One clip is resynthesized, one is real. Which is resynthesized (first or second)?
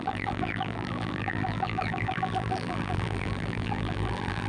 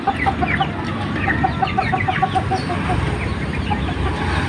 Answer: first